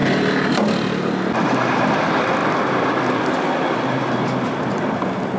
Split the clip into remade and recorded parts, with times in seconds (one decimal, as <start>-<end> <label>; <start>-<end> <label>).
0.0-2.4 recorded; 2.4-5.0 remade; 5.0-5.4 recorded